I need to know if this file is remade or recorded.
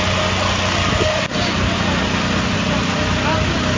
recorded